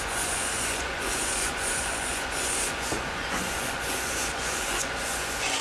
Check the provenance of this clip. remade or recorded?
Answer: remade